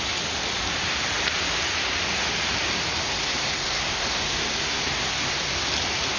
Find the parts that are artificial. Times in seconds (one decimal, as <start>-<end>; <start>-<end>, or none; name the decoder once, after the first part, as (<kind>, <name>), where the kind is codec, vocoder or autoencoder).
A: 3.0-5.3 (codec, SNAC)